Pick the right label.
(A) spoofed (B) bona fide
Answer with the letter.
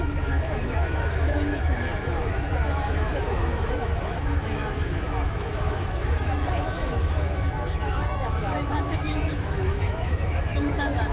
A